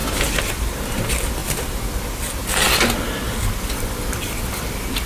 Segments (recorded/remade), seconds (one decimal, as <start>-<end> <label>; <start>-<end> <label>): 0.0-0.6 remade; 0.6-5.1 recorded